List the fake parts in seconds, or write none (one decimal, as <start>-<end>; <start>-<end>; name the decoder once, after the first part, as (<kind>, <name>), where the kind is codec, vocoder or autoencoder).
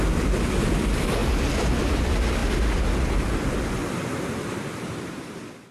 0.0-2.4 (vocoder, BigVGAN v2); 4.5-5.7